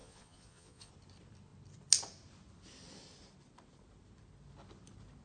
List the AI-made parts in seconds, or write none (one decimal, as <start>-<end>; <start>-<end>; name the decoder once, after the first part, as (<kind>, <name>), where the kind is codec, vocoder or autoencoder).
0.0-0.9 (vocoder, Vocos)